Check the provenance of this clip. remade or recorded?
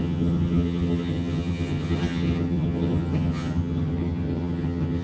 remade